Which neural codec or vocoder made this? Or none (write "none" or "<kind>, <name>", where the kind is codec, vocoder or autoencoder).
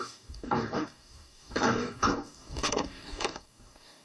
codec, DAC